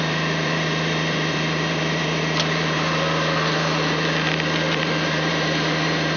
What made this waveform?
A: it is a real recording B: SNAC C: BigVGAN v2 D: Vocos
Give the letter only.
C